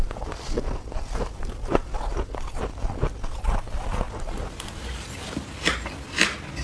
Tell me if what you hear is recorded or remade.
recorded